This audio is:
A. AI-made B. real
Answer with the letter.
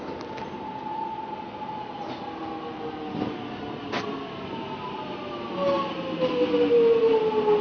B